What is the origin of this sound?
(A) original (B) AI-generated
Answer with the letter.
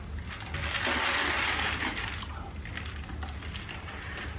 A